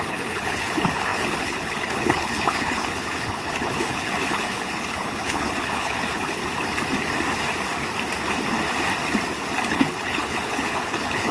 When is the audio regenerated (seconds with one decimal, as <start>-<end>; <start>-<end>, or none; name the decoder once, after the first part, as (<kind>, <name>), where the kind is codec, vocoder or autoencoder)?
0.0-6.4 (codec, HILCodec); 9.7-11.3